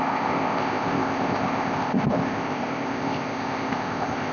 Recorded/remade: remade